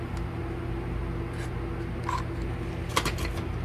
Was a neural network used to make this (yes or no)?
no